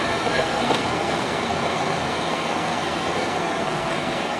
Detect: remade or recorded remade